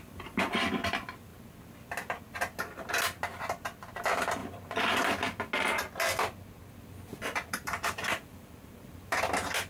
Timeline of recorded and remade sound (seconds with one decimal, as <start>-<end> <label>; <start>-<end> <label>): 0.0-4.4 recorded; 4.4-5.4 remade; 5.4-7.1 recorded; 7.1-9.2 remade; 9.2-9.7 recorded